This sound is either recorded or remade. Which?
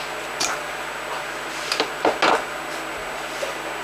recorded